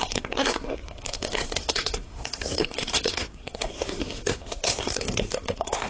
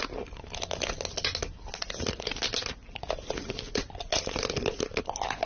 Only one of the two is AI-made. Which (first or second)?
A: first